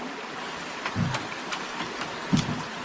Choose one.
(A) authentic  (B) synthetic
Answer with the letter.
B